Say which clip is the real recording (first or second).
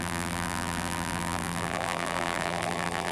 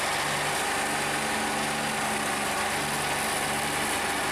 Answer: second